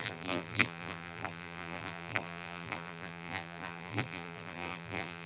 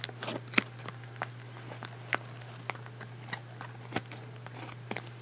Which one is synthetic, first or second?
first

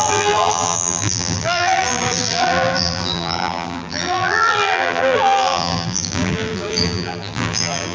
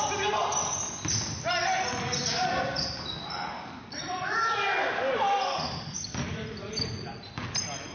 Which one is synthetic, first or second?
first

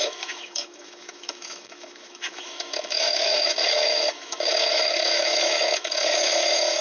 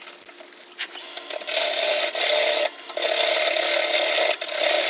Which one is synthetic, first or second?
first